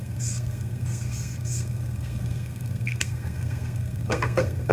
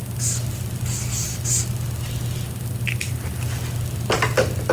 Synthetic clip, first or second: first